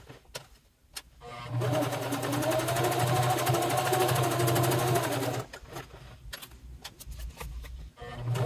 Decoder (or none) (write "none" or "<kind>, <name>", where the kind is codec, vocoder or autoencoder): none